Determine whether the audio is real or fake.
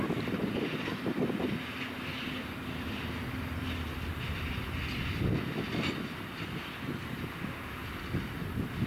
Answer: real